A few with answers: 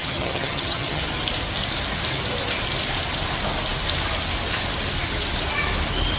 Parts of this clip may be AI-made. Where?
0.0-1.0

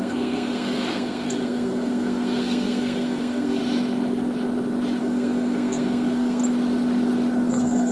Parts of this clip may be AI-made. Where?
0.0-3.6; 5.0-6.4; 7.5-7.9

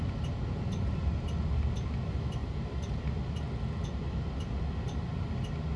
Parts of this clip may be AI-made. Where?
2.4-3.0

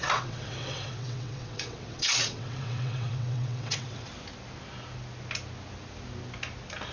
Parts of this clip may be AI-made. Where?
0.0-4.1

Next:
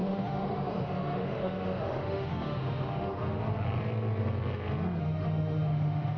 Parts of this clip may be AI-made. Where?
0.0-3.4; 5.0-6.2